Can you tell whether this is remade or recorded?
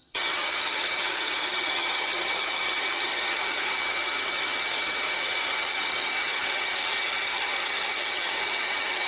remade